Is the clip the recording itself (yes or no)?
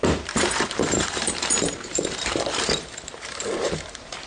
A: no